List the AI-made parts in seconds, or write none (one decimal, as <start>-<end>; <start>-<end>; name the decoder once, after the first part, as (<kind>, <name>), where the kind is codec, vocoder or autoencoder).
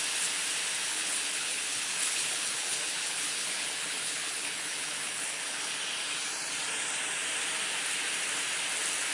0.9-5.7 (codec, HILCodec)